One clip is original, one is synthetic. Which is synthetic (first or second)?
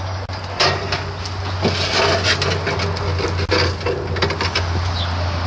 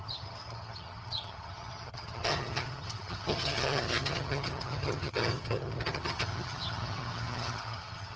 second